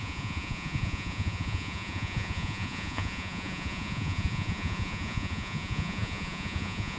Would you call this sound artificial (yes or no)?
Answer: yes